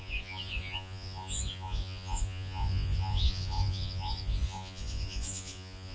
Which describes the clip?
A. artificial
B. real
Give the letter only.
A